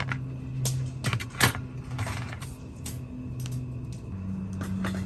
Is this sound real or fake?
real